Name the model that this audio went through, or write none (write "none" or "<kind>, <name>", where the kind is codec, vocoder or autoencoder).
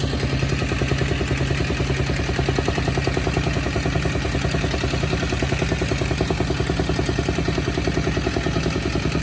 none